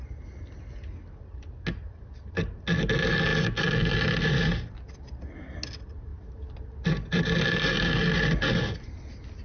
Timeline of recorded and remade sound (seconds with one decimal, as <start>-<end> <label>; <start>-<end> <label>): 0.0-9.4 recorded